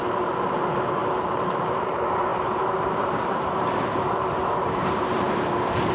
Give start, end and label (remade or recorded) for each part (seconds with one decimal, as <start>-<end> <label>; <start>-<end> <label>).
0.0-1.0 remade; 1.0-1.7 recorded; 1.7-5.9 remade